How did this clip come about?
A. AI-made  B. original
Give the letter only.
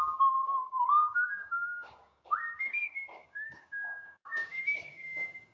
A